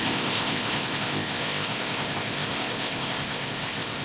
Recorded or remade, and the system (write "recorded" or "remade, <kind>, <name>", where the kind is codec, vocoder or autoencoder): remade, codec, ZipCodec